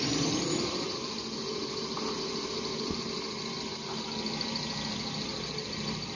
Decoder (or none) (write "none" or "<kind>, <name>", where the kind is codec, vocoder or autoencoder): none